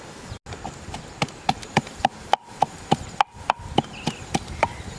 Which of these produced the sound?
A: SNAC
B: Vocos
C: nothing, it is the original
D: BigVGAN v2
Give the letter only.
C